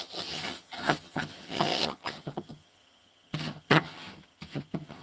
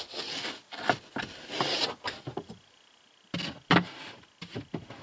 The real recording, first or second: second